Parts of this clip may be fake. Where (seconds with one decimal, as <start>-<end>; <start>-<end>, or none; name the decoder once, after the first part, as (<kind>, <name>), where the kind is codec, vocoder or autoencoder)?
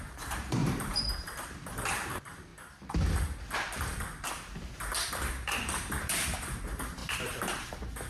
0.0-2.5 (vocoder, BigVGAN v2); 5.1-8.1